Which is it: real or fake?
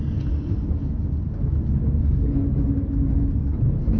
real